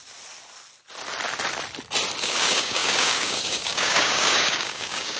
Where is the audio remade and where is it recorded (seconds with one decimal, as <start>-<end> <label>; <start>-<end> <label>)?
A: 0.0-2.2 recorded; 2.2-5.2 remade

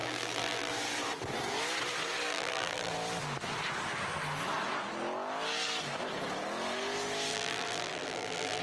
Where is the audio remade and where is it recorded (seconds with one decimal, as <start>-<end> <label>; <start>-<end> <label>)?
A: 0.0-0.7 remade; 0.7-2.3 recorded; 2.3-2.9 remade; 2.9-7.3 recorded; 7.3-8.6 remade

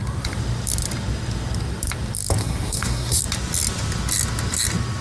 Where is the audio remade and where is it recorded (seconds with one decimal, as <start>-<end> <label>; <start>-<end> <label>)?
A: 0.0-2.4 recorded; 2.4-3.2 remade; 3.2-5.0 recorded

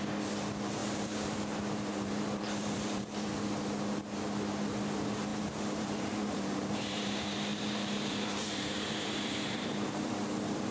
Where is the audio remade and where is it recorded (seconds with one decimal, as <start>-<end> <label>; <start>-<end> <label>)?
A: 0.0-0.8 recorded; 0.8-3.3 remade; 3.3-5.3 recorded; 5.3-10.7 remade

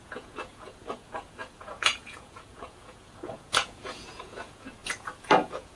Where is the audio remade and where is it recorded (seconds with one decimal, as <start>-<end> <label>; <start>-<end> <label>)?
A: 0.0-5.8 remade